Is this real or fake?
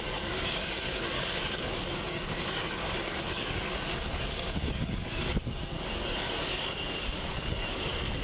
fake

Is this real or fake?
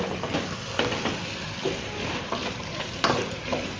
real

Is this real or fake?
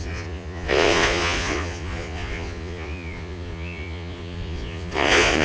fake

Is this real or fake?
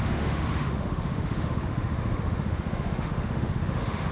fake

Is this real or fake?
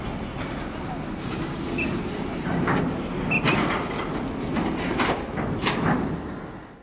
real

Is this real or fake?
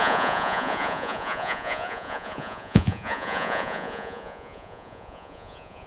fake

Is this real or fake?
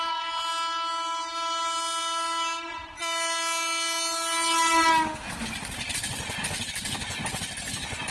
real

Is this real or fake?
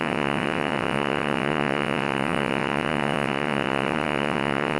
fake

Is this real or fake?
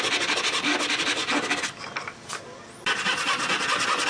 real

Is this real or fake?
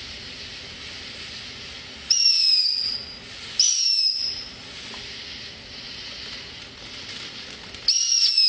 real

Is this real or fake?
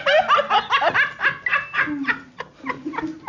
real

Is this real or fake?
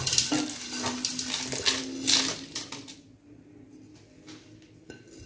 real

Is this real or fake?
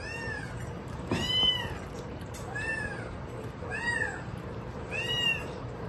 fake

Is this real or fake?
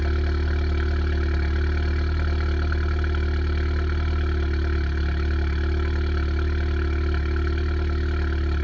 real